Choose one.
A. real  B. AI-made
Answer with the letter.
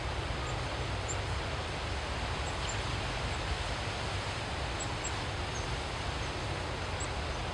A